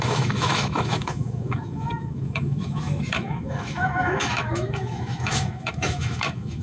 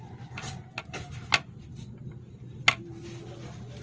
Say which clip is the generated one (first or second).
first